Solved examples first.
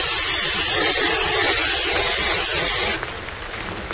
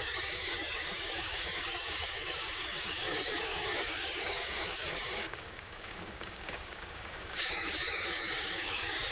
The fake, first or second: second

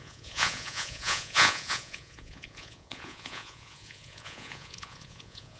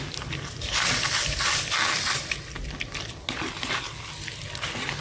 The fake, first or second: first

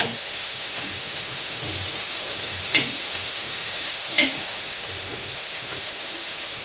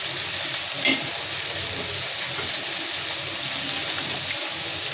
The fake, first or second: first